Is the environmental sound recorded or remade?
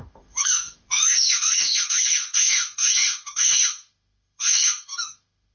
remade